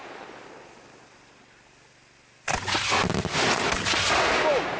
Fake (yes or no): no